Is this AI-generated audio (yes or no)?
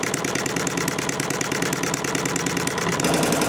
no